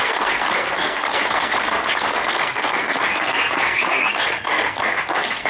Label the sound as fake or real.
fake